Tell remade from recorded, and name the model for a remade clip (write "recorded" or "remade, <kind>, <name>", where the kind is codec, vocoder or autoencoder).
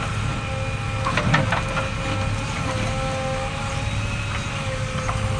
recorded